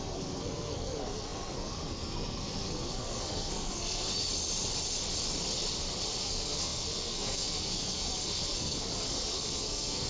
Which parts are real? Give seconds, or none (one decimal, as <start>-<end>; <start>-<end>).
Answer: 4.1-6.2